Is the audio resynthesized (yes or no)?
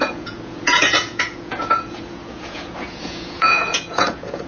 yes